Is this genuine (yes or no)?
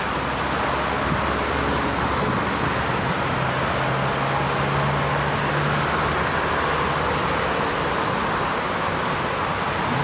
yes